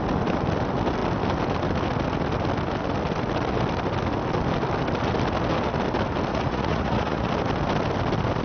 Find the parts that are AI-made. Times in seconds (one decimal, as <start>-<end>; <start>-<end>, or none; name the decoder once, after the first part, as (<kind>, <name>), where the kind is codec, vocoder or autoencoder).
6.3-7.3 (vocoder, Vocos)